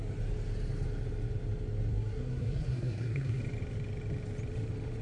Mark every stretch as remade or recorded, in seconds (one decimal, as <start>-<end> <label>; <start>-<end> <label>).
0.0-1.9 recorded; 1.9-3.4 remade; 3.4-5.0 recorded